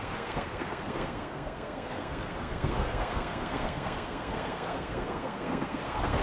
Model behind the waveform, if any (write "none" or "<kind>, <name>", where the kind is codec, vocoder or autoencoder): codec, SNAC